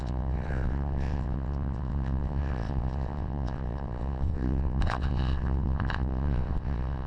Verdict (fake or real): fake